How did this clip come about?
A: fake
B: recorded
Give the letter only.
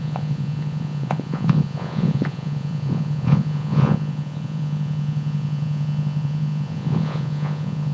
A